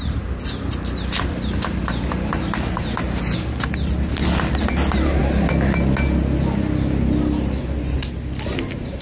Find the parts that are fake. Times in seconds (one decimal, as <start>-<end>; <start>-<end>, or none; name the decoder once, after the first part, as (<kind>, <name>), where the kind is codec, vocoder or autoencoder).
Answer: none